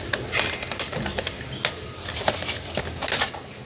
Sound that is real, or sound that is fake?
real